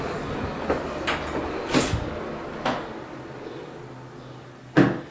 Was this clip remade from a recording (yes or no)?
no